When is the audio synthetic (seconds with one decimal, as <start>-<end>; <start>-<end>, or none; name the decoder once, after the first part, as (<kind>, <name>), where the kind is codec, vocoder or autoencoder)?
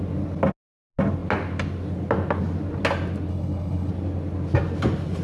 3.3-3.9 (codec, HILCodec)